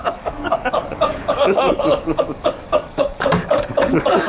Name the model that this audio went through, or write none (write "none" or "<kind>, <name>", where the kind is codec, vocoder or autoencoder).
codec, DAC